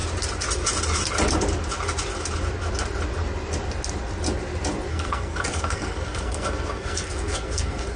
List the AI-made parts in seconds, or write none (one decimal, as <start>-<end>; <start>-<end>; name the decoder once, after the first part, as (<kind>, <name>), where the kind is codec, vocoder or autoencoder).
4.9-8.0 (codec, SNAC)